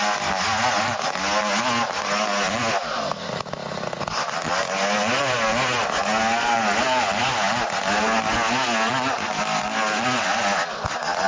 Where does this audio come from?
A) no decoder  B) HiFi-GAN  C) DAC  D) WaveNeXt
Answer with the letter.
A